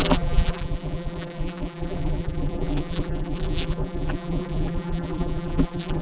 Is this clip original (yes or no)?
no